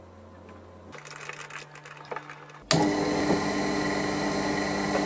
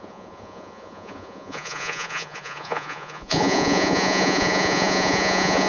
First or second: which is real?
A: first